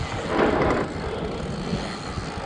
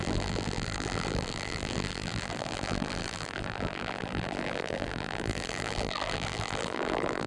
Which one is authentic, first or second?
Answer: first